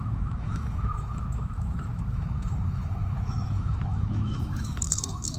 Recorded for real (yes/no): no